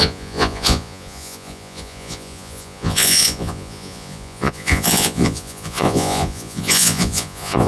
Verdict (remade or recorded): remade